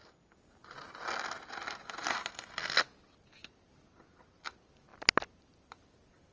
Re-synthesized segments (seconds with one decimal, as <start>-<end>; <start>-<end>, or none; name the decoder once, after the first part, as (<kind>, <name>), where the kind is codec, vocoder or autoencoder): none